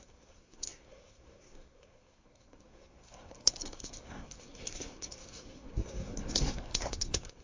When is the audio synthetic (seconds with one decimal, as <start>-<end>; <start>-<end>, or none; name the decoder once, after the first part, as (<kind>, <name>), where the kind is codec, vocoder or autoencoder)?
0.0-7.4 (codec, SNAC)